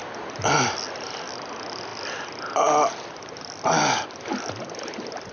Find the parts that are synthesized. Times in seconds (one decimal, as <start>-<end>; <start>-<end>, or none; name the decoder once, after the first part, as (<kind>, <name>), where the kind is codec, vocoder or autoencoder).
none